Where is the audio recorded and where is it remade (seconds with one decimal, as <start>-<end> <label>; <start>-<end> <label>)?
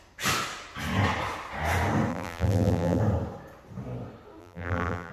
0.0-2.1 recorded; 2.1-3.0 remade; 3.0-4.4 recorded; 4.4-5.1 remade